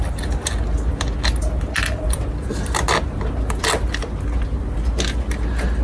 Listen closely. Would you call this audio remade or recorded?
recorded